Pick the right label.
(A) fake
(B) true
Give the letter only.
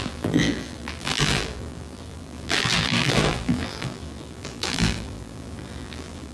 A